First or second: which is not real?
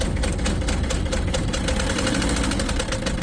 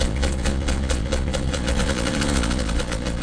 second